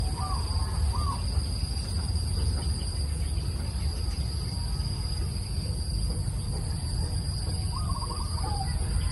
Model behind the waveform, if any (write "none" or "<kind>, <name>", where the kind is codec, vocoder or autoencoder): none